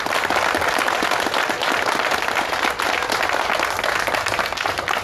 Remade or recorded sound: recorded